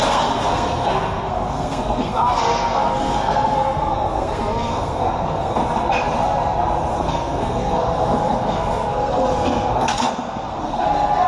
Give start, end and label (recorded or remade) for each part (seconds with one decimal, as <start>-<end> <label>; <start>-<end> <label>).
0.0-5.6 remade; 5.6-6.9 recorded; 6.9-11.3 remade